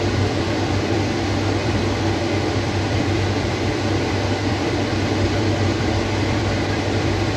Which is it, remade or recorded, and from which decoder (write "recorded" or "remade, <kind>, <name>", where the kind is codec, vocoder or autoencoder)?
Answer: remade, vocoder, BigVGAN v2